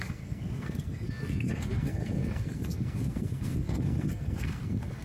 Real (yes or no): no